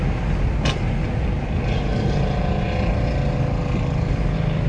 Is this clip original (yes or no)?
yes